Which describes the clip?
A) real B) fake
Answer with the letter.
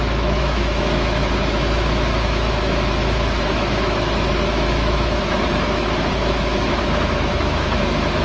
B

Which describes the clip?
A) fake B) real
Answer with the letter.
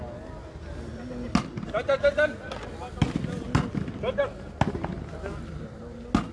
B